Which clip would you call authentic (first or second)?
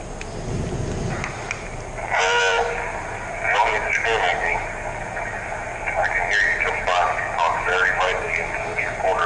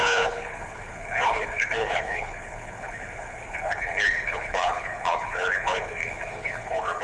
first